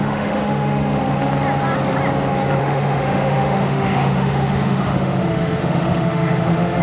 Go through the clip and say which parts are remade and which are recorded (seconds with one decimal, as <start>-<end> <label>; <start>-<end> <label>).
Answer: 0.0-1.0 remade; 1.0-2.6 recorded; 2.6-6.8 remade